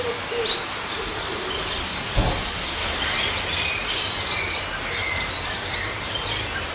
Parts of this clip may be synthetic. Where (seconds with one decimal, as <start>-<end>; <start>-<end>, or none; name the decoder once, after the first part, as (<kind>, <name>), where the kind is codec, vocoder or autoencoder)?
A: 1.9-2.4 (vocoder, BigVGAN v2)